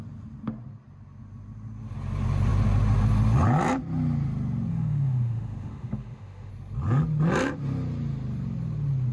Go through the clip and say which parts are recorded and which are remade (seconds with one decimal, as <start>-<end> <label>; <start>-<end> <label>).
0.0-4.7 recorded; 4.7-6.5 remade; 6.5-9.1 recorded